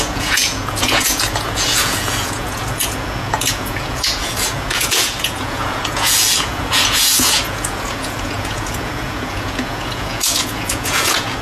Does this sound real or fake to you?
fake